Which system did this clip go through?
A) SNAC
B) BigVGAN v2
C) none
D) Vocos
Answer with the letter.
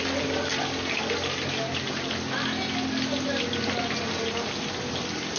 C